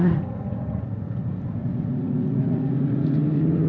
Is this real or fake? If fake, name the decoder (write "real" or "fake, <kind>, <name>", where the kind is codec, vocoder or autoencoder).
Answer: fake, vocoder, Vocos